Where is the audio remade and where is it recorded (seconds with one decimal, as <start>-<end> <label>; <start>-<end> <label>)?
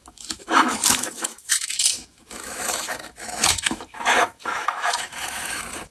0.0-5.9 remade